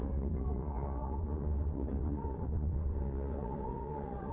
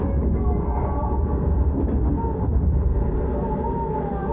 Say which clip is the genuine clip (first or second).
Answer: second